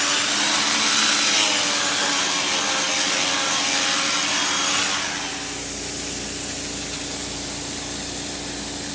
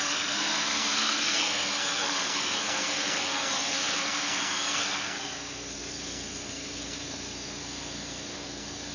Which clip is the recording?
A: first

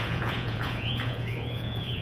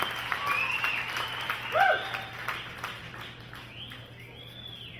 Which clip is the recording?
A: second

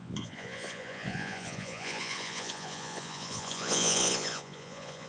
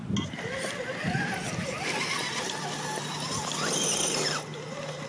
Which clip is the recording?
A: second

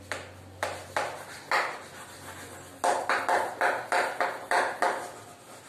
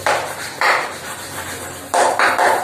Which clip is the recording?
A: first